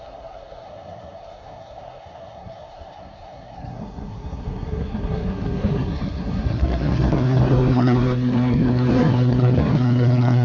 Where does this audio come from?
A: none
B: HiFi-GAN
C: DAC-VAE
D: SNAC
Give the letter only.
D